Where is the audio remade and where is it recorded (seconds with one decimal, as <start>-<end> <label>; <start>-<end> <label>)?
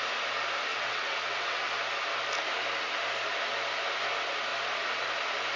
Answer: 0.0-0.7 recorded; 0.7-1.6 remade; 1.6-5.6 recorded